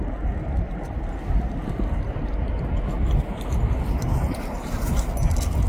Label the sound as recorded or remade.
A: recorded